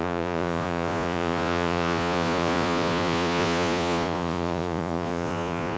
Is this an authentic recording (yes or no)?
no